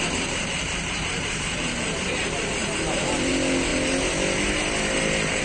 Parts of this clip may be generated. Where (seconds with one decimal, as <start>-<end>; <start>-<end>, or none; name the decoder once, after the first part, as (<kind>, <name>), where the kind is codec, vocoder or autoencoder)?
2.6-3.3 (vocoder, BigVGAN v2)